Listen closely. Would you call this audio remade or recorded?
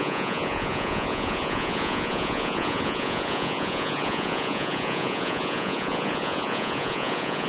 remade